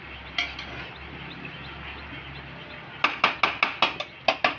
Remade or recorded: recorded